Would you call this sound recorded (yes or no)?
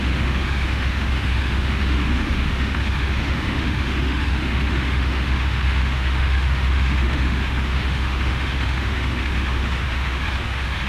no